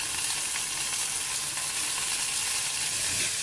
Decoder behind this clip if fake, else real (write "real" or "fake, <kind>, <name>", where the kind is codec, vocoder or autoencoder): real